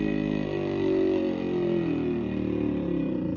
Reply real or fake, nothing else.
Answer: real